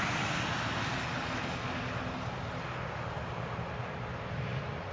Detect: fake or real real